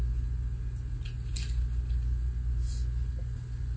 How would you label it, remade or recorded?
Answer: recorded